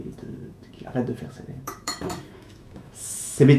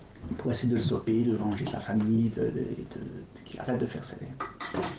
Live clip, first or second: second